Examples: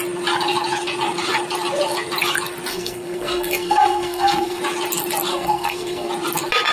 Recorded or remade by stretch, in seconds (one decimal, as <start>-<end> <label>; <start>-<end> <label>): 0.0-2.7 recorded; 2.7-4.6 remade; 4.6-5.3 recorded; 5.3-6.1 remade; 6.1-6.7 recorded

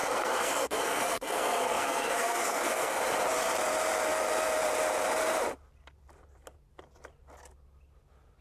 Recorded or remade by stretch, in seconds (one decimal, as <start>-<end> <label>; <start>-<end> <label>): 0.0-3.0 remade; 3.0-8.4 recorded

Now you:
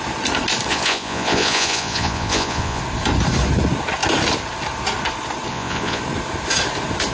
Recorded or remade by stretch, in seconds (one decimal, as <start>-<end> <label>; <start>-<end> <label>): 0.0-0.7 recorded; 0.7-2.8 remade; 2.8-5.5 recorded; 5.5-6.0 remade; 6.0-7.1 recorded

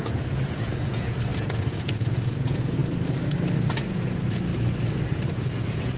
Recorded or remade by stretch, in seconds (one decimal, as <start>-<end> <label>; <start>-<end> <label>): 0.0-2.8 remade; 2.8-3.9 recorded; 3.9-4.5 remade; 4.5-5.1 recorded; 5.1-6.0 remade

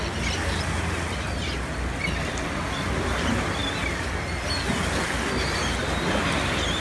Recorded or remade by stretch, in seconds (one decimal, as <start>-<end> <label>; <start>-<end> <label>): 0.0-6.8 recorded